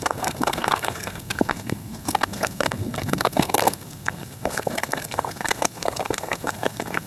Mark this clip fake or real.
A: fake